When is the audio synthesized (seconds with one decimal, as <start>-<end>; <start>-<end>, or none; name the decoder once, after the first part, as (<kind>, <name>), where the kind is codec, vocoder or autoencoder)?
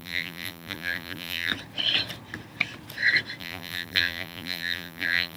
0.0-1.5 (vocoder, BigVGAN v2); 3.4-5.4